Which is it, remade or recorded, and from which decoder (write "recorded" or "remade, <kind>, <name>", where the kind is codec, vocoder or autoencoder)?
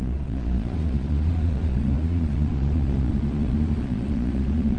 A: remade, vocoder, Vocos